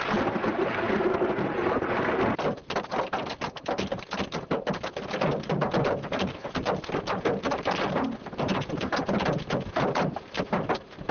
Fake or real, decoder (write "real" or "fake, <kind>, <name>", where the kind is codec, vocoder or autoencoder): real